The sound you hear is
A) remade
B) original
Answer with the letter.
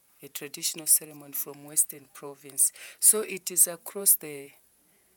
A